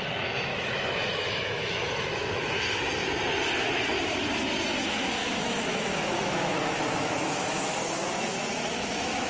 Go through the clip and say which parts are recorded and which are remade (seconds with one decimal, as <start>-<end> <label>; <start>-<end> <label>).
0.0-0.5 recorded; 0.5-2.6 remade; 2.6-5.2 recorded; 5.2-9.3 remade